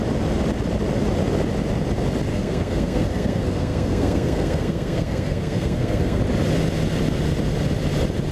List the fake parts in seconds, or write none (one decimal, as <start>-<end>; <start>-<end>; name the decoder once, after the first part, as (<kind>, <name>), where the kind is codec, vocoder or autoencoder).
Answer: 2.3-6.2 (codec, SNAC)